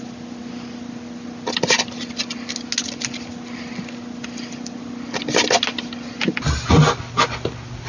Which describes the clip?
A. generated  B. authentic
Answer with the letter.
B